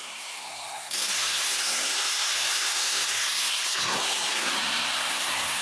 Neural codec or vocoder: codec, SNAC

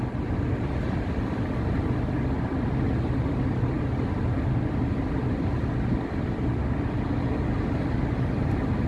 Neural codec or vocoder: none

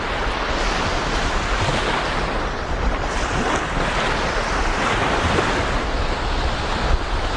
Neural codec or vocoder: none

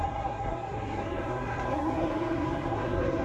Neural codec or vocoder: codec, SNAC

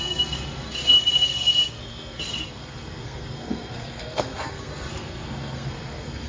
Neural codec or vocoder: codec, SNAC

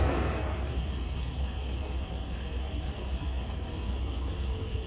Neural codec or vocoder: codec, SNAC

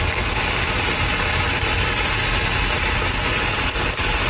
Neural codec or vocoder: none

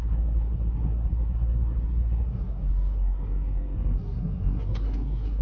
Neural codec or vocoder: codec, SNAC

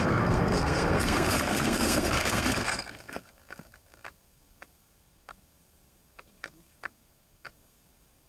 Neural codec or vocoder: codec, SNAC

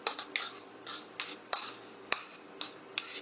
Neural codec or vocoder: none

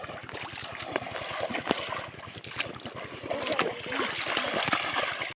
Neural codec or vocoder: none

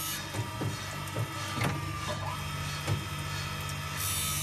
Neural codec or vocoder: none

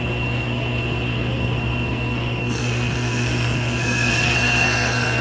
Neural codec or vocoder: codec, SNAC